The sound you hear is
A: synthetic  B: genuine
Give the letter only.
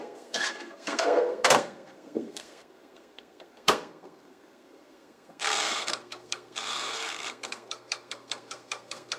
A